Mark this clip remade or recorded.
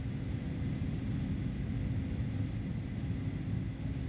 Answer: recorded